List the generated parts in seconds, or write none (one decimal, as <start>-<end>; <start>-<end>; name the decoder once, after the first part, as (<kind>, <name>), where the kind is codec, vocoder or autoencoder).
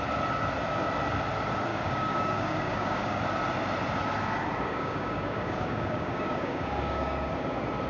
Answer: 1.7-3.2 (codec, DAC); 4.7-7.3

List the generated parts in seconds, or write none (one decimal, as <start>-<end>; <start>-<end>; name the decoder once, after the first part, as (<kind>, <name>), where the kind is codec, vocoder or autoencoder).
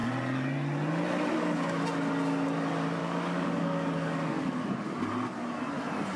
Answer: 3.0-4.6 (codec, DAC)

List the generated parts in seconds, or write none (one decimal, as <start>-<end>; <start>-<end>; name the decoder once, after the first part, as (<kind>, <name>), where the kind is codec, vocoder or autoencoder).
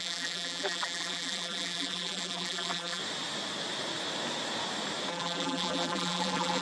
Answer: 0.0-3.0 (vocoder, BigVGAN v2); 5.1-6.6